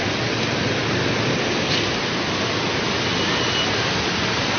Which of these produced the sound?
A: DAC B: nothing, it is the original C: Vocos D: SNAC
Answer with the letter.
B